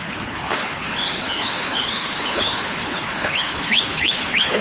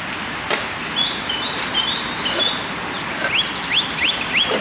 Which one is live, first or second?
second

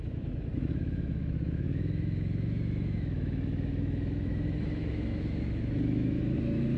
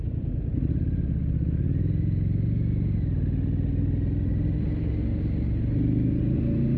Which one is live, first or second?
second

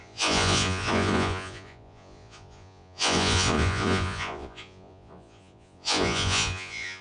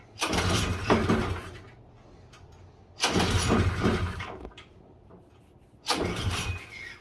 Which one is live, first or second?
second